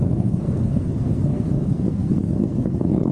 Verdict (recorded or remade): remade